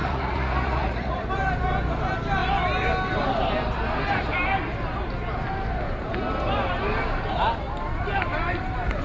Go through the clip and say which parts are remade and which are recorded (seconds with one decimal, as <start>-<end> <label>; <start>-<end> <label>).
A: 0.0-1.3 remade; 1.3-9.0 recorded